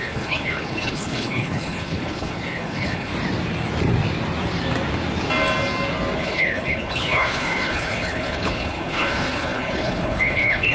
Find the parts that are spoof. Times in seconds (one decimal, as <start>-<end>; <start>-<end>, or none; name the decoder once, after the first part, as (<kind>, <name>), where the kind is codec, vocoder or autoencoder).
0.0-3.1 (codec, HILCodec); 6.2-10.7